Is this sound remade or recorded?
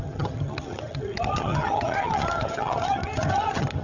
remade